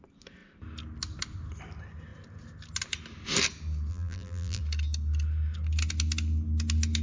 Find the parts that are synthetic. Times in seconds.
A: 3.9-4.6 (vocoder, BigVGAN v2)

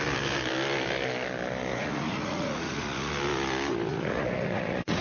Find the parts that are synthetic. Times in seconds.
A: 1.7-3.1 (vocoder, Vocos); 3.9-5.0

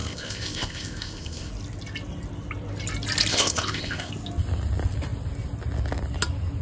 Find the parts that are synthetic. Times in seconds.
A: 0.0-1.5 (codec, ZipCodec); 3.3-4.1